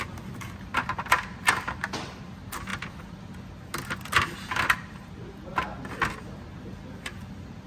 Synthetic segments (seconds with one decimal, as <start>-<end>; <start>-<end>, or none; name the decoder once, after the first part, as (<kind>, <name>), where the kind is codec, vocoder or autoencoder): none

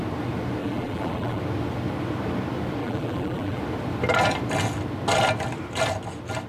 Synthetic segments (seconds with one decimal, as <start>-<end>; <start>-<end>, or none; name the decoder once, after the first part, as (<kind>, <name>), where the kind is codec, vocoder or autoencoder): 0.6-1.4 (vocoder, BigVGAN v2); 2.8-3.6

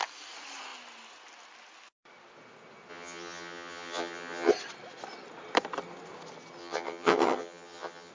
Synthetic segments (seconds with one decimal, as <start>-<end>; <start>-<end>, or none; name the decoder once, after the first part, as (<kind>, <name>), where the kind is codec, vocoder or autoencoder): 2.9-4.5 (vocoder, HiFi-GAN); 6.6-8.1

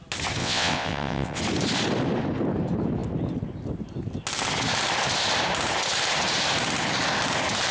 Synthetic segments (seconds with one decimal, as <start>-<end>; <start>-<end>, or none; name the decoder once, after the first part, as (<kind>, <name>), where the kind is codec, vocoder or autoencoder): 0.4-1.4 (vocoder, WaveNeXt)

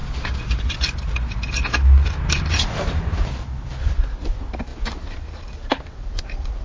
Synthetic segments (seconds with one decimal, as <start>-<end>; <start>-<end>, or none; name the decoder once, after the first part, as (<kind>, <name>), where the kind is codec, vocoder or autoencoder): none

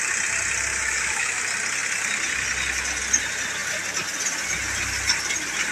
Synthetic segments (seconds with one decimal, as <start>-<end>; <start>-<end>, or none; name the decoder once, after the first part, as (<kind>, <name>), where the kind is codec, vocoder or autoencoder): 0.7-1.4 (autoencoder, DAC-VAE)

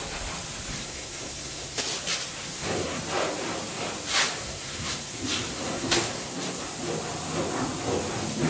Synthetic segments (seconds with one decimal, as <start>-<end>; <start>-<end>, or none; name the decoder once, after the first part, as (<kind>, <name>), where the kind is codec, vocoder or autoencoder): 0.7-1.8 (codec, SNAC); 2.4-3.0; 4.4-5.1; 5.5-6.6